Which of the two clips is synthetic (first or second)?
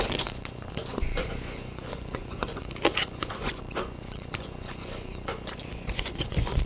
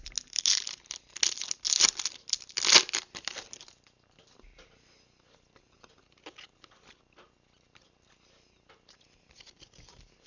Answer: first